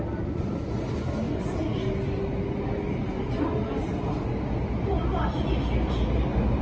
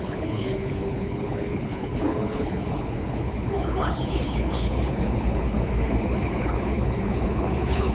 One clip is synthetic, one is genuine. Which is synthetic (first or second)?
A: second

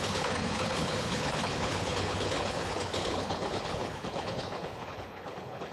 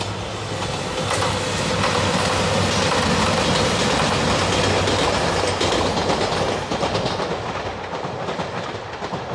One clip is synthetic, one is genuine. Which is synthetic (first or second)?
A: first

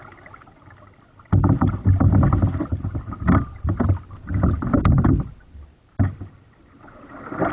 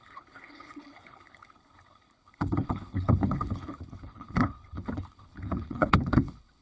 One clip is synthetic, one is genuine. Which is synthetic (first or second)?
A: second